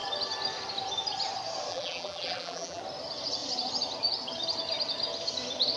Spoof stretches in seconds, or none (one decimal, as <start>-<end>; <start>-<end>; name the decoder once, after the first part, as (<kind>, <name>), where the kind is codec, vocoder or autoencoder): 1.7-2.8 (vocoder, BigVGAN v2)